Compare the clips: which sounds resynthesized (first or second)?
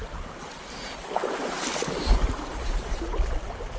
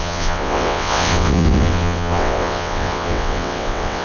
second